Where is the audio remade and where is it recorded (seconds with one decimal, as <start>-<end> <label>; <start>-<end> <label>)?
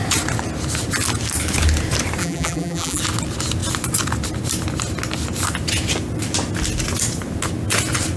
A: 0.0-2.2 recorded; 2.2-3.0 remade; 3.0-8.2 recorded